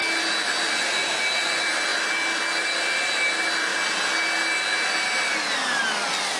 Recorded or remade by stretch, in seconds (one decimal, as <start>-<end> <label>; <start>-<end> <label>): 0.0-6.4 recorded